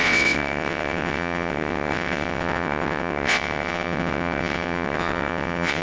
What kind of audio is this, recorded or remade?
remade